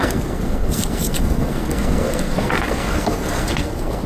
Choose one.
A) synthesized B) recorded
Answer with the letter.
A